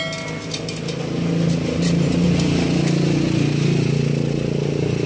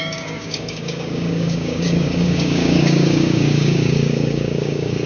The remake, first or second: second